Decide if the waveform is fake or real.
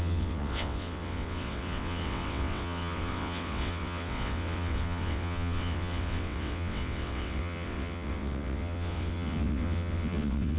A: fake